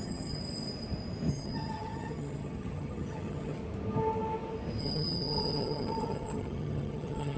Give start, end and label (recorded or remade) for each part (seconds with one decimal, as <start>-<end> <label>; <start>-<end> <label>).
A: 0.0-0.4 remade; 0.4-1.3 recorded; 1.3-3.6 remade; 3.6-4.8 recorded; 4.8-7.4 remade